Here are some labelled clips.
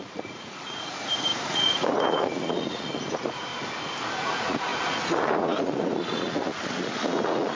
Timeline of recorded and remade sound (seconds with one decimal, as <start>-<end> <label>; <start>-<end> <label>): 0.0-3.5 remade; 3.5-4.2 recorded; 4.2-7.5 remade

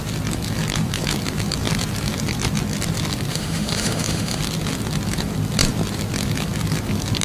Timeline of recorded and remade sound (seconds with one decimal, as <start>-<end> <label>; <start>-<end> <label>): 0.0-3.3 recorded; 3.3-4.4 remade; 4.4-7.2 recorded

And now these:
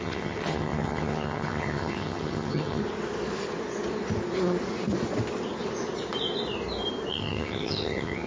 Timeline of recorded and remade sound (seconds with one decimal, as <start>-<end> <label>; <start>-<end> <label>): 0.0-2.8 remade; 2.8-7.1 recorded; 7.1-8.3 remade

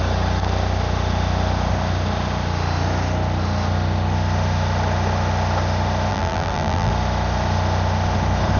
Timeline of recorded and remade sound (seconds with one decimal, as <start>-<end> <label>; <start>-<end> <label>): 0.0-6.1 recorded; 6.1-6.9 remade; 6.9-8.6 recorded

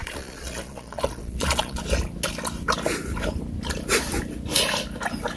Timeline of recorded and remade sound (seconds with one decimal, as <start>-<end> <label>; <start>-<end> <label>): 0.0-1.8 remade; 1.8-5.4 recorded

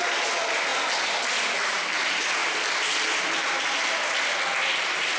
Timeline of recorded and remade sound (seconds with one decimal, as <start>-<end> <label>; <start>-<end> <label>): 0.0-5.2 recorded